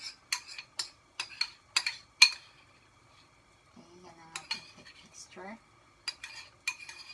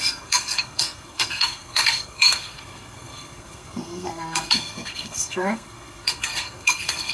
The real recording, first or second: first